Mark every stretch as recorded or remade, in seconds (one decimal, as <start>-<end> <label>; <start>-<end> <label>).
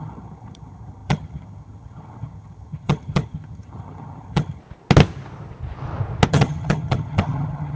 0.0-4.6 remade; 4.6-6.3 recorded; 6.3-7.8 remade